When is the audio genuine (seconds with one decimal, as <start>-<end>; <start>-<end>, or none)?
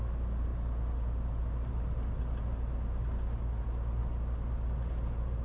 0.0-5.4